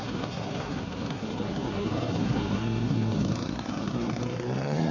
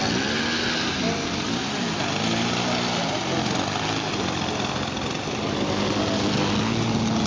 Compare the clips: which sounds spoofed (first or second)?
first